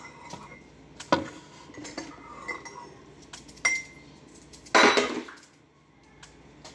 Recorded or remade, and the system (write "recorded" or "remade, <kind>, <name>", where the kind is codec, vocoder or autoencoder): recorded